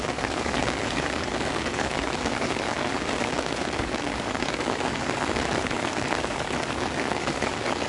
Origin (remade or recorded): remade